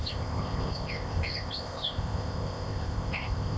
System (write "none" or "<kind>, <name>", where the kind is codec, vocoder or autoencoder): codec, ZipCodec